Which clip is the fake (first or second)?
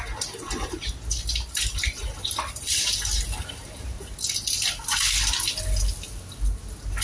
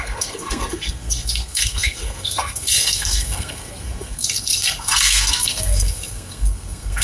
second